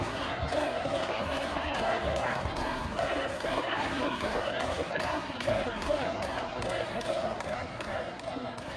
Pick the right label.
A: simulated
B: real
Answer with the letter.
A